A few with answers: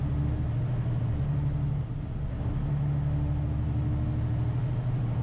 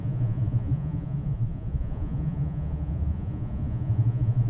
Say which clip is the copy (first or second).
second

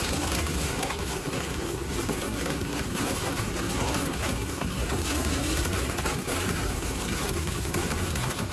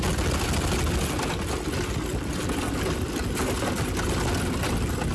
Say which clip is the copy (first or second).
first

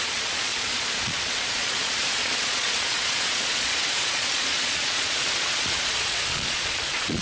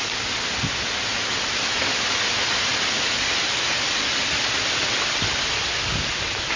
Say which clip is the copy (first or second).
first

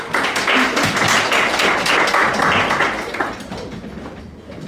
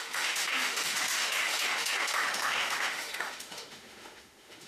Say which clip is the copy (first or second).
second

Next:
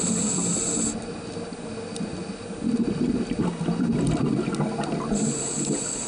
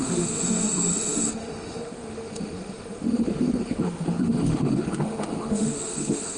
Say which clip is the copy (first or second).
second